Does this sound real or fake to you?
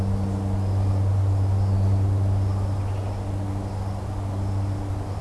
real